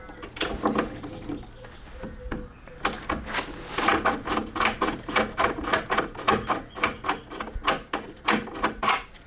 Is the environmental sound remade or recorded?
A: recorded